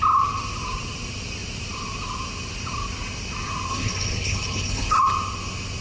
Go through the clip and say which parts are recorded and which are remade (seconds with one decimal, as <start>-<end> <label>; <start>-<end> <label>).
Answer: 0.0-3.7 recorded; 3.7-5.0 remade; 5.0-5.8 recorded